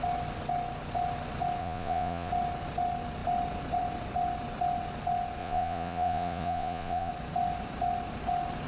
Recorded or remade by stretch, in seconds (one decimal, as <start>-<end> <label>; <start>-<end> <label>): 0.0-1.6 recorded; 1.6-2.3 remade; 2.3-5.4 recorded; 5.4-7.1 remade; 7.1-8.7 recorded